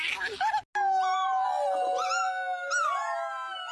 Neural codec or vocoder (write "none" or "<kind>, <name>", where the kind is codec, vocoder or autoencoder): none